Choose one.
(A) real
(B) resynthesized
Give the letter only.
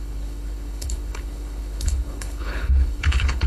B